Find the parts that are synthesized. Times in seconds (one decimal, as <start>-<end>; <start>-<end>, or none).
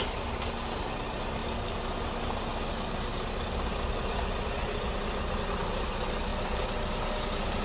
none